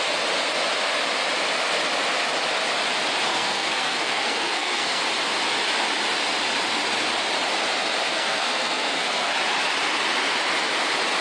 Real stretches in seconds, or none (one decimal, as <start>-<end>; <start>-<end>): 0.0-3.3; 5.0-8.1; 9.3-11.2